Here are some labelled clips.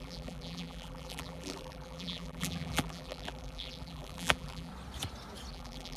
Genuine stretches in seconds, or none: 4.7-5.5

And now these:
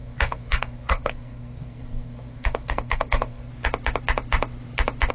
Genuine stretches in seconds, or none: 3.5-5.1

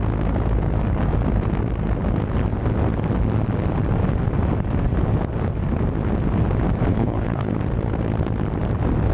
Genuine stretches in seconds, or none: 0.0-6.9; 7.5-9.1

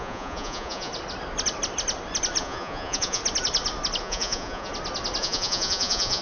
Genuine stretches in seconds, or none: 0.9-2.4; 3.2-4.0; 4.7-5.2

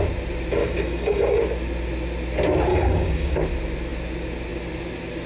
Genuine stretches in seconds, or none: 0.0-0.6; 1.4-2.7; 3.4-5.3